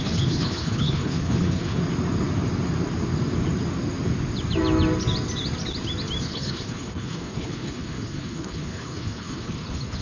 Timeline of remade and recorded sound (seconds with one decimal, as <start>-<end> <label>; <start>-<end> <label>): 0.0-1.8 remade; 1.8-6.2 recorded; 6.2-10.0 remade